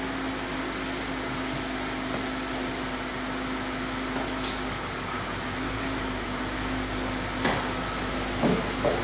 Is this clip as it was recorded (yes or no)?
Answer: yes